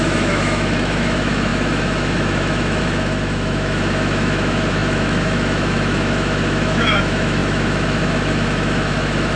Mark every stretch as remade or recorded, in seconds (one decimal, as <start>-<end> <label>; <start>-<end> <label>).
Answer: 0.0-9.4 remade